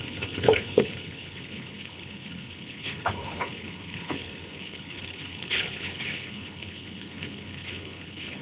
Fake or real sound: fake